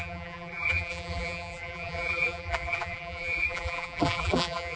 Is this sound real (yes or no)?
no